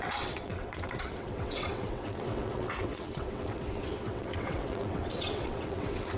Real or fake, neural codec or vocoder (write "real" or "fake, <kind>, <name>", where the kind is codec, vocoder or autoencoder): fake, vocoder, WaveNeXt